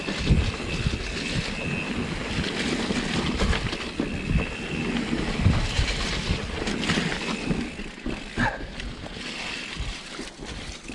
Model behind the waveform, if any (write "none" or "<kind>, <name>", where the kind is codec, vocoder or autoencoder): none